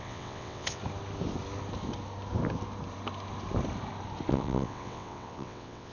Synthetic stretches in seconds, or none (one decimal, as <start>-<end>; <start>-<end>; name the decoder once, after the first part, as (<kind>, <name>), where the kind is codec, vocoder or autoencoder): 0.0-0.8 (vocoder, WaveNeXt); 4.3-5.9